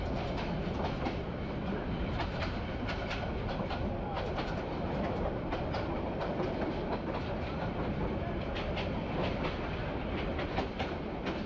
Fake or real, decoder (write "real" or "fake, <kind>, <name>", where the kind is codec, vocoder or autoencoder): real